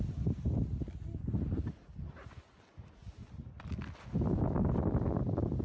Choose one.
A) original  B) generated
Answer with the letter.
A